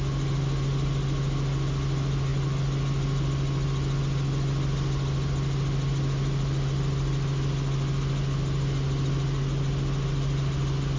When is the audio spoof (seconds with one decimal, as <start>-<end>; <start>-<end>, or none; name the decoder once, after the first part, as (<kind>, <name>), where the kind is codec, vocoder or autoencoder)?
none